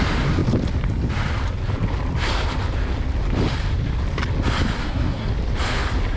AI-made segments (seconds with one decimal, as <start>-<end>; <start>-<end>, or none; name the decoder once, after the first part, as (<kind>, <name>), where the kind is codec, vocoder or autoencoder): 4.8-5.3 (codec, SNAC)